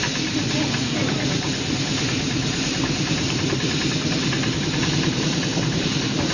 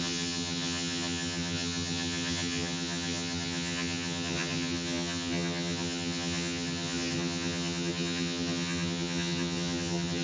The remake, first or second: second